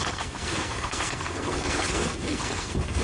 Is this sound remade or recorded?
remade